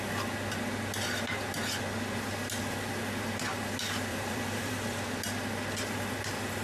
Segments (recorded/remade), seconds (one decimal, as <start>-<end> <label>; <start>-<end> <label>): 0.0-4.1 recorded; 4.1-5.0 remade; 5.0-6.6 recorded